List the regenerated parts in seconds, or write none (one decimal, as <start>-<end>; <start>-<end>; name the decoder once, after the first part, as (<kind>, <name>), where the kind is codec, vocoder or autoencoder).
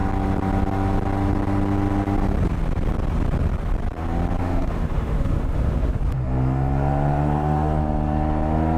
4.4-6.0 (autoencoder, DAC-VAE)